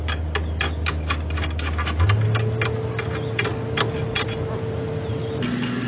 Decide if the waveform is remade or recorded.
recorded